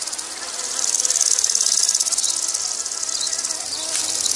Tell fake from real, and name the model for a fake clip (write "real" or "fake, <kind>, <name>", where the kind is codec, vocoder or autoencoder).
real